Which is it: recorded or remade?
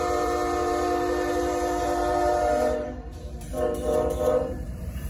remade